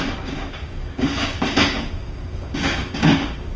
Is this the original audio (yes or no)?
no